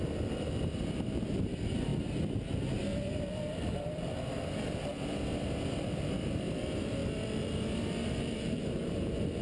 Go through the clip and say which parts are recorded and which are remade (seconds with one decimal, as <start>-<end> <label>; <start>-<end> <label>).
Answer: 0.0-1.9 remade; 1.9-3.5 recorded; 3.5-4.9 remade; 4.9-5.7 recorded; 5.7-9.4 remade